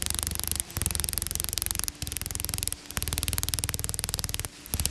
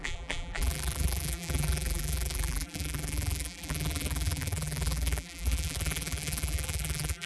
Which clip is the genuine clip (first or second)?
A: first